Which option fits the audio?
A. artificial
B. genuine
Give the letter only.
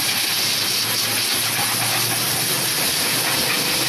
B